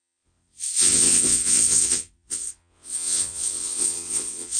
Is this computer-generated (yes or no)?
yes